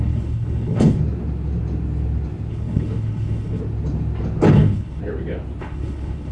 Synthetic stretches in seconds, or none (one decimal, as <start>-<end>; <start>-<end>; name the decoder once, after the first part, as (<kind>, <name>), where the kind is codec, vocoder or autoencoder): 0.0-1.0 (codec, HILCodec); 2.5-3.6; 4.5-5.0; 5.6-6.3